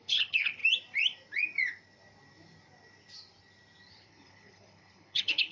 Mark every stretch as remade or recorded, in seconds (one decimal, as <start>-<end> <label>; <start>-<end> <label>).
0.0-0.6 remade; 0.6-3.9 recorded; 3.9-5.5 remade